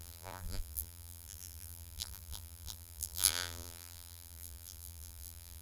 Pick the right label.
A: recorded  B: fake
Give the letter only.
B